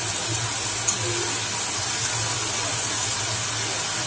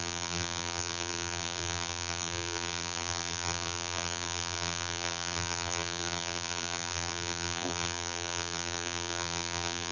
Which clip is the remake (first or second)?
second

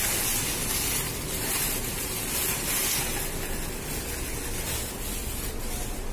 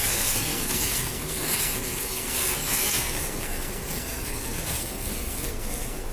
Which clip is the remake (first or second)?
second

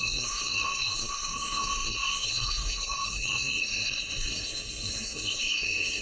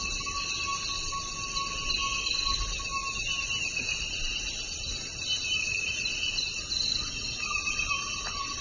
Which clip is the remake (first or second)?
first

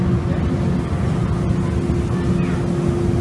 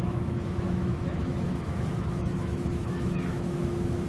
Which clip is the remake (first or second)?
second